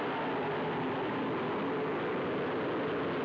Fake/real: real